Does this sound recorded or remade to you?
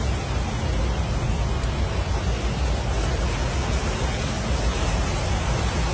recorded